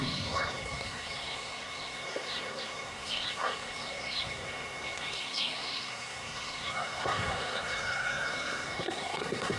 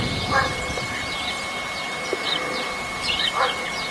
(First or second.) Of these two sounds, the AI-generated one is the first